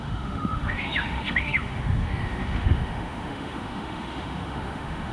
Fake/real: fake